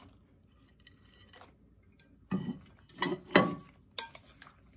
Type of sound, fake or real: real